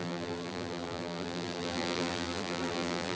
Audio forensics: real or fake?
fake